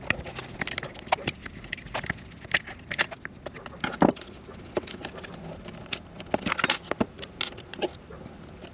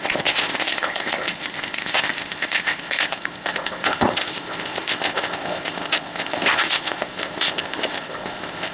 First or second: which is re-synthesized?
second